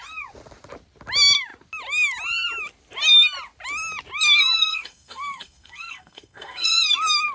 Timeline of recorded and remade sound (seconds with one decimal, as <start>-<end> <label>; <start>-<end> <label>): 0.0-4.7 recorded; 4.7-6.7 remade; 6.7-7.3 recorded